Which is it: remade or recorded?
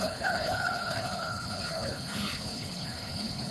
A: remade